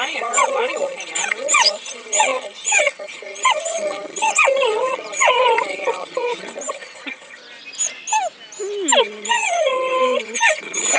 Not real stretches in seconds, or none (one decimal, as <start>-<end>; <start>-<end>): 0.0-7.4; 9.0-11.0